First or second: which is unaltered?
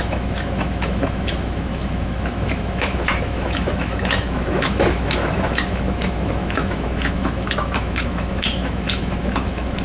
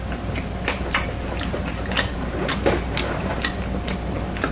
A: second